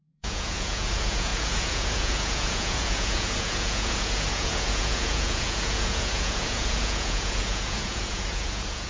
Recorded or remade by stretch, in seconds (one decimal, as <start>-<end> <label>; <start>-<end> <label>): 0.0-8.9 remade